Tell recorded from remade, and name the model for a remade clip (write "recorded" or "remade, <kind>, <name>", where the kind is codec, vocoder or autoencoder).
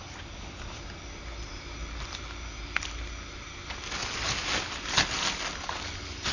recorded